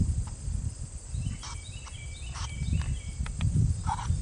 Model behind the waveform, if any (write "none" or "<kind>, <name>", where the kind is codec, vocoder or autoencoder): none